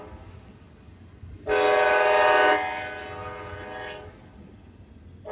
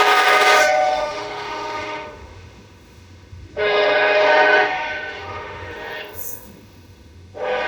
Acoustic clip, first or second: first